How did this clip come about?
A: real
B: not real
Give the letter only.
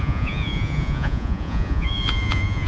B